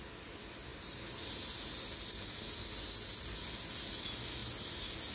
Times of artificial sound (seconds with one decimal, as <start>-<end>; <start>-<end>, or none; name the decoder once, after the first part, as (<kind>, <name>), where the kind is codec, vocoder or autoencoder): none